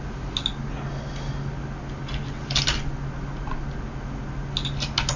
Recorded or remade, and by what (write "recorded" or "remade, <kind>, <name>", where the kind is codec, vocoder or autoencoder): recorded